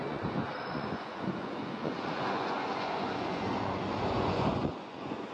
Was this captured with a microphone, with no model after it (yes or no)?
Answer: no